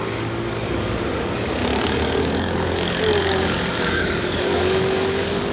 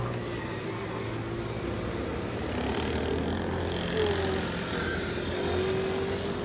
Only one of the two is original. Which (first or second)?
second